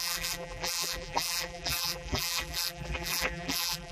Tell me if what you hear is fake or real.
fake